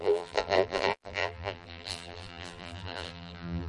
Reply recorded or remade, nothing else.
remade